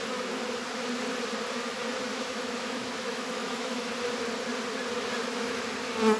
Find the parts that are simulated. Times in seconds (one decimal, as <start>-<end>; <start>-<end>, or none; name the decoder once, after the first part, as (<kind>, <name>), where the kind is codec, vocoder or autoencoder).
2.1-3.9 (autoencoder, DAC-VAE); 5.2-5.7